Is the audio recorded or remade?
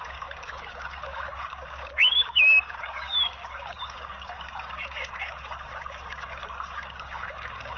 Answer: remade